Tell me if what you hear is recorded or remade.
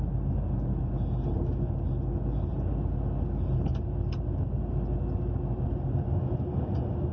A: recorded